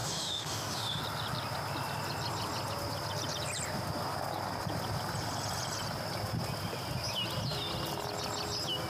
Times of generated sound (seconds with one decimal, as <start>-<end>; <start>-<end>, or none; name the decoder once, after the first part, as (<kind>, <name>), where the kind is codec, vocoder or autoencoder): 0.0-1.0 (autoencoder, DAC-VAE)

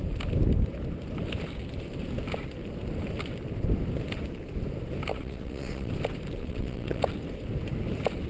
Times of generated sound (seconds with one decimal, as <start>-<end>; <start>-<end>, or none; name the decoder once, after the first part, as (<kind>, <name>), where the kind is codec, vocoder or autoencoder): 5.1-5.9 (vocoder, WaveNeXt); 6.4-7.0

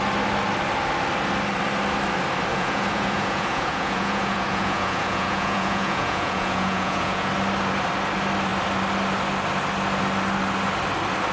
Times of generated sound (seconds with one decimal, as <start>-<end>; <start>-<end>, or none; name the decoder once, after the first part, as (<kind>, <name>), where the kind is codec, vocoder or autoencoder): 2.5-7.3 (vocoder, Vocos)

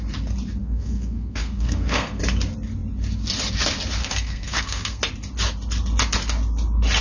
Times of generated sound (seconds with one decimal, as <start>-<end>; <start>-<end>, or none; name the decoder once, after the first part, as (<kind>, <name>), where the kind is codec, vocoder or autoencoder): 0.6-2.2 (codec, SNAC); 4.0-5.0

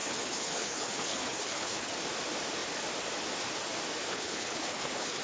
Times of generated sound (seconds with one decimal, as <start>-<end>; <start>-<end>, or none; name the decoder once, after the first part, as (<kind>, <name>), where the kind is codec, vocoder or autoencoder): 0.0-1.9 (codec, HILCodec); 4.1-5.2

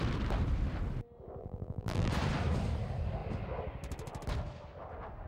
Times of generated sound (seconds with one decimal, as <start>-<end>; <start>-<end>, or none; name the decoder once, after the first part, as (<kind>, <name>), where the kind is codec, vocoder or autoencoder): 1.4-2.1 (vocoder, BigVGAN v2)

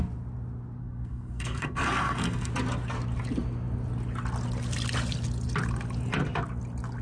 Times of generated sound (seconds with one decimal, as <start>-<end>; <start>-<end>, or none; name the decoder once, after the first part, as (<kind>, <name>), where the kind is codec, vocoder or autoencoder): 0.8-2.5 (codec, SNAC)